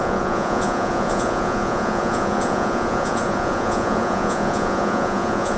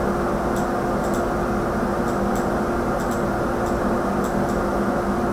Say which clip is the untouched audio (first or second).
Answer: second